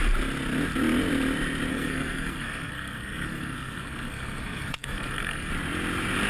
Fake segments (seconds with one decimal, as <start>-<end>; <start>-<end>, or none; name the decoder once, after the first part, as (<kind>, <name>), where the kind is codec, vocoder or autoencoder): 1.7-5.5 (codec, SNAC)